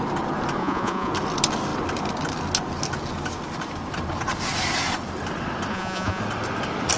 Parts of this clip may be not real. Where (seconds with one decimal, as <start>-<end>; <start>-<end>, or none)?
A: 0.6-1.1; 5.7-6.2